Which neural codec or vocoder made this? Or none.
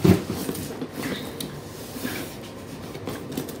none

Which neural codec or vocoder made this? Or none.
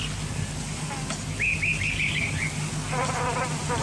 none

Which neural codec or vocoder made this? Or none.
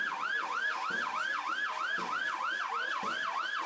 none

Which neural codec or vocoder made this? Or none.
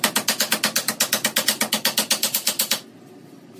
none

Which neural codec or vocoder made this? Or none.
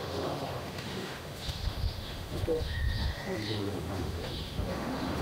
autoencoder, DAC-VAE